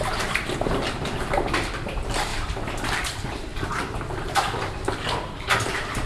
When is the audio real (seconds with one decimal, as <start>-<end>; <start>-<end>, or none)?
2.3-2.9